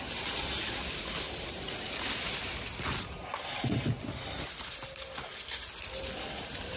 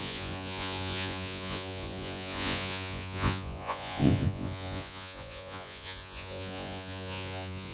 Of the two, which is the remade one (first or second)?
second